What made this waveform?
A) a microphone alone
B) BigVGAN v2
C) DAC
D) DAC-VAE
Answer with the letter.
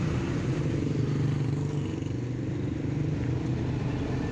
A